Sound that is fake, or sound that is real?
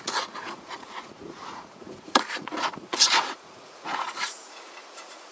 fake